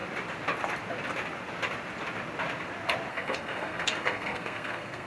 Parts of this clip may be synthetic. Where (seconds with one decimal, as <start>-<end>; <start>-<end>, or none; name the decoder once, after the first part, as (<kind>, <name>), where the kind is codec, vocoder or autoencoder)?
3.1-5.1 (codec, SNAC)